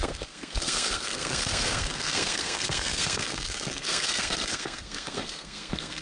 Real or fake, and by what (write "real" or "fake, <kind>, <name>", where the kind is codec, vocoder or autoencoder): fake, codec, SNAC